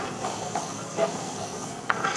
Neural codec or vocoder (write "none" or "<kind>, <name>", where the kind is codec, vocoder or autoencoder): codec, SNAC